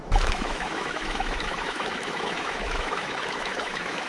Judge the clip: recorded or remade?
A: remade